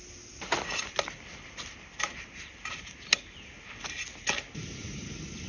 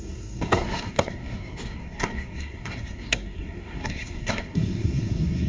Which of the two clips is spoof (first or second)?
second